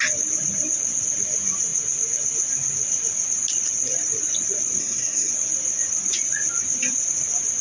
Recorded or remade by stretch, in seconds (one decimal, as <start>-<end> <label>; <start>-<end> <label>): 0.0-4.8 recorded; 4.8-5.3 remade; 5.3-7.6 recorded